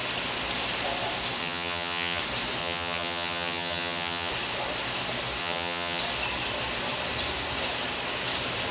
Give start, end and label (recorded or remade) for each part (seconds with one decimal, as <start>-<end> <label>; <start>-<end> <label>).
0.0-1.4 recorded; 1.4-2.2 remade; 2.2-2.6 recorded; 2.6-4.3 remade; 4.3-5.4 recorded; 5.4-6.0 remade; 6.0-8.7 recorded